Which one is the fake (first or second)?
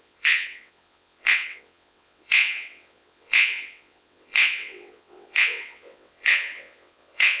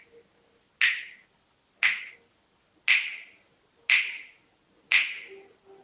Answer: first